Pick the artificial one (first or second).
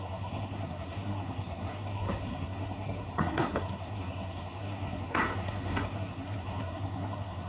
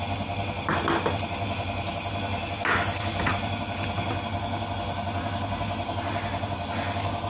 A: first